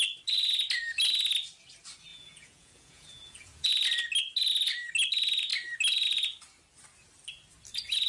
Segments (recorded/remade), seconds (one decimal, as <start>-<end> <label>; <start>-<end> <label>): 0.0-2.1 recorded; 2.1-3.7 remade; 3.7-8.1 recorded